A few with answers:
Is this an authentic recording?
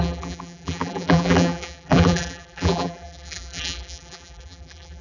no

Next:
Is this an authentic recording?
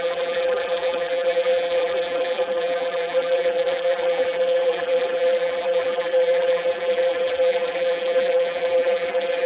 no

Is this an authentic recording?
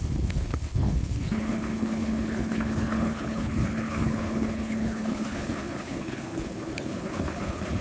no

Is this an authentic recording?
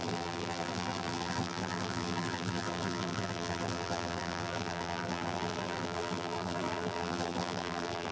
no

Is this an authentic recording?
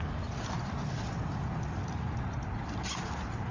yes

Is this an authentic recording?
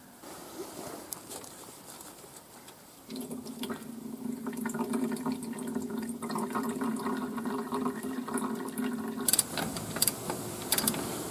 no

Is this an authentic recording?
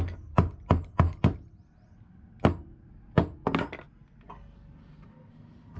yes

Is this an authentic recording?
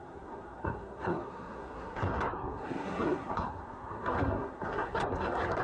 no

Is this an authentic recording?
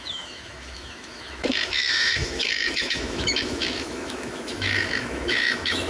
no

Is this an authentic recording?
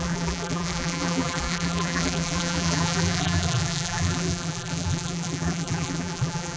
no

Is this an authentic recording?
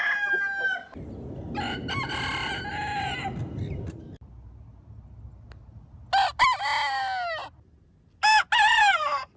yes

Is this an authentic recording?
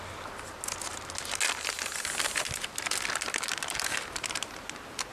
yes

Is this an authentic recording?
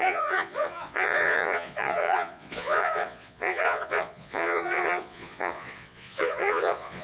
no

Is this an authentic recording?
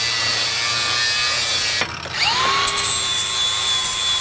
yes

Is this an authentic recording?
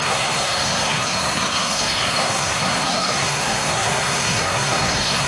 no